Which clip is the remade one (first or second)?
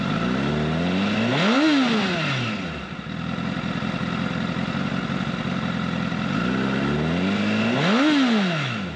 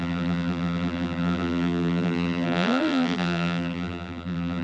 second